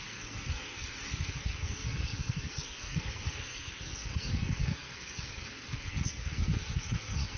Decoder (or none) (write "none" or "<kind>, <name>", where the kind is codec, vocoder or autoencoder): codec, SNAC